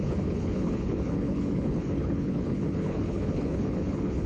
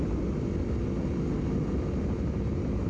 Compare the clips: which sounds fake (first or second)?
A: first